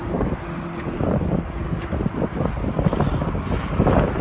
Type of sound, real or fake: real